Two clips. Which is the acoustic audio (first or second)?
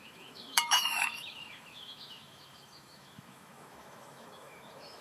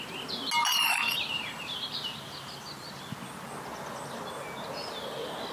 second